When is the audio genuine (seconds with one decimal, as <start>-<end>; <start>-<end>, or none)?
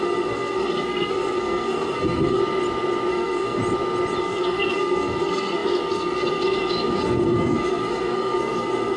2.4-3.1; 3.6-4.2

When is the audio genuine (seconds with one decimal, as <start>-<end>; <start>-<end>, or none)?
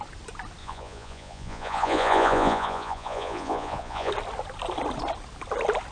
0.0-0.6; 4.1-5.9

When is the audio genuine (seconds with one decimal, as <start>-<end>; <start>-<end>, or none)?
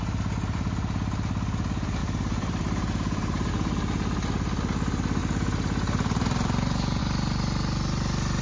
0.0-2.0; 3.5-5.2; 7.0-8.4